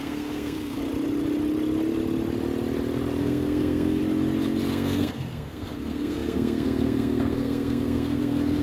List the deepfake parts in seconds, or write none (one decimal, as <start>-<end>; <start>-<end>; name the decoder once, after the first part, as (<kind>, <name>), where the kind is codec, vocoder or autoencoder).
0.0-0.8 (codec, SNAC); 3.2-4.0; 4.7-8.6

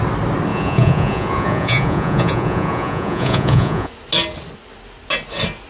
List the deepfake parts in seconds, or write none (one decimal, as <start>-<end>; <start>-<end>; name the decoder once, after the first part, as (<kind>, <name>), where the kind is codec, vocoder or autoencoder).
0.5-3.9 (vocoder, Vocos)

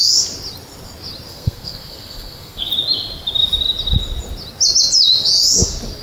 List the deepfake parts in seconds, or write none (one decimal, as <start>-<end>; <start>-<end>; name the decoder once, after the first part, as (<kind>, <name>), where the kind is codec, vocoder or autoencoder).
1.3-2.7 (codec, SNAC)

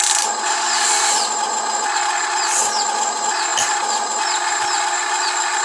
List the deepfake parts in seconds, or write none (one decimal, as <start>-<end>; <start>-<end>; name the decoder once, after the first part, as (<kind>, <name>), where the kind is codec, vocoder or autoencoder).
none

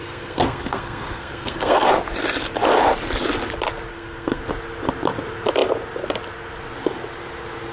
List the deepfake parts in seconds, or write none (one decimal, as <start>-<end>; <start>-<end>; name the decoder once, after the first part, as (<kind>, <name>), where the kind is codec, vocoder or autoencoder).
0.0-1.9 (codec, SNAC); 3.9-4.4

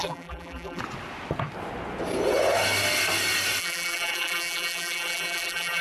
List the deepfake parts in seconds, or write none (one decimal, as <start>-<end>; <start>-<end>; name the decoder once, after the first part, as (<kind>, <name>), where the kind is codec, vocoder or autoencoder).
0.0-0.8 (vocoder, BigVGAN v2); 3.6-5.8

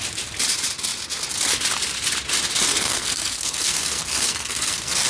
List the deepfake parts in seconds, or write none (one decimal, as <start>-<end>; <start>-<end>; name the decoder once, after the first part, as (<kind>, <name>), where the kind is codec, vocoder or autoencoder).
2.7-5.1 (codec, SNAC)

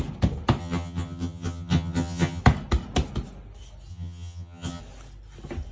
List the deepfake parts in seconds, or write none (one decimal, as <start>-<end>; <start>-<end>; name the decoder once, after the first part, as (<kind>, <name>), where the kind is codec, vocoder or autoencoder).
0.6-2.4 (vocoder, HiFi-GAN); 3.9-4.8